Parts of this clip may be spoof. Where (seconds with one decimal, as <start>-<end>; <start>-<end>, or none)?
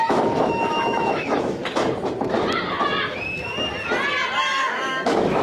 0.0-1.6; 4.4-5.4